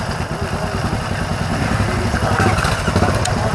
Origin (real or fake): real